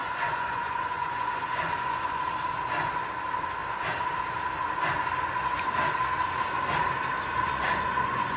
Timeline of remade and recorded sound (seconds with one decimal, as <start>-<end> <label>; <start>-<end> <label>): 0.0-2.3 remade; 2.3-7.3 recorded; 7.3-8.4 remade